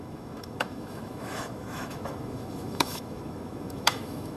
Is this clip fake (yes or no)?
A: yes